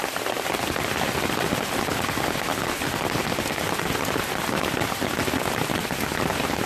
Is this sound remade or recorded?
recorded